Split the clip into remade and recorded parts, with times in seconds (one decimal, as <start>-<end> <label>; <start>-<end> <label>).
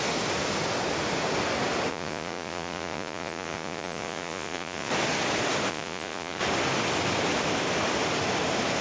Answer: 0.0-1.9 recorded; 1.9-4.9 remade; 4.9-5.7 recorded; 5.7-6.4 remade; 6.4-8.8 recorded